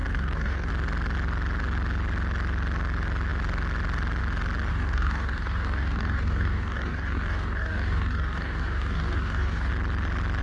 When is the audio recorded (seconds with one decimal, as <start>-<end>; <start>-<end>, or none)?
0.7-4.7; 9.7-10.4